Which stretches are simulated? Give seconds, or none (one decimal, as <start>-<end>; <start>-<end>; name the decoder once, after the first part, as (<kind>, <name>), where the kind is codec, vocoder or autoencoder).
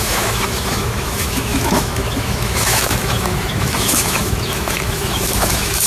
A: 0.0-5.9 (autoencoder, DAC-VAE)